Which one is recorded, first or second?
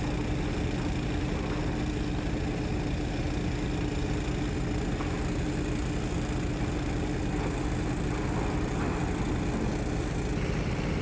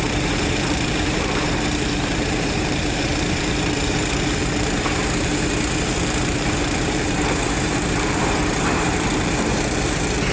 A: first